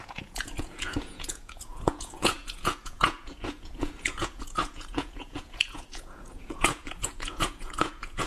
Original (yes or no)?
no